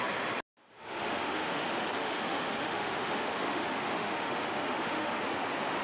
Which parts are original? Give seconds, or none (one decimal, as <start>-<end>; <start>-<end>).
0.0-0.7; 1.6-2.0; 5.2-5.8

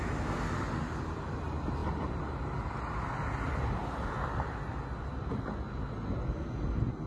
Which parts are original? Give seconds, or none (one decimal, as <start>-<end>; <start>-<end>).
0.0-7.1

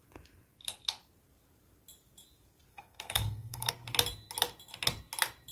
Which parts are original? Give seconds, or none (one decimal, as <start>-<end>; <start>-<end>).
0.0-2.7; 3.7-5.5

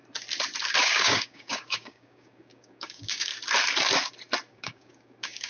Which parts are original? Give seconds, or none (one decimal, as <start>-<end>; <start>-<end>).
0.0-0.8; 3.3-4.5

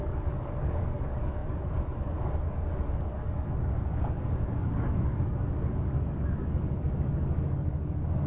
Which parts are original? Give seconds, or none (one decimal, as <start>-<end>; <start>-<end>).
none

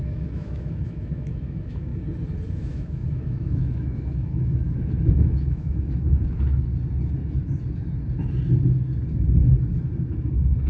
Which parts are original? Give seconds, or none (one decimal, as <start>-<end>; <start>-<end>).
1.9-2.5; 6.7-10.7

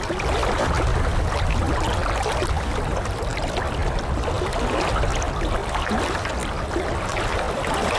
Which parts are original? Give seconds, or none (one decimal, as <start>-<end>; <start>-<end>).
0.0-8.0

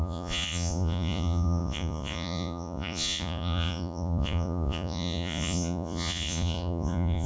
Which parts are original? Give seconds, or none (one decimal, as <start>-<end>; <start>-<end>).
none